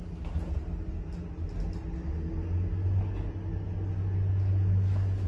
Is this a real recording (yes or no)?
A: yes